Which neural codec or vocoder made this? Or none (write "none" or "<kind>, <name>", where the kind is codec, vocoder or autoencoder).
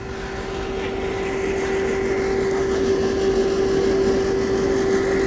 none